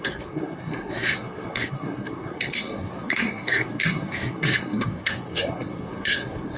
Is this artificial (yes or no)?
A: yes